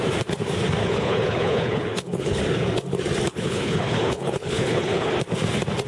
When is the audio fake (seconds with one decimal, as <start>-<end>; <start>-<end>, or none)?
0.8-2.4; 3.3-5.1